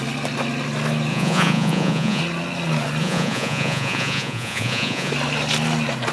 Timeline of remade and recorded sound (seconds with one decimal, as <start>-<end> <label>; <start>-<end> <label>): 0.0-1.1 recorded; 1.1-2.2 remade; 2.2-3.0 recorded; 3.0-5.1 remade; 5.1-6.1 recorded